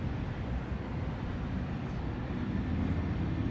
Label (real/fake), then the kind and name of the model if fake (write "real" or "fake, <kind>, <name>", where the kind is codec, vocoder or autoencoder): real